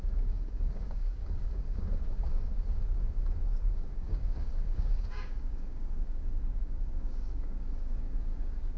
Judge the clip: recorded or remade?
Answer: remade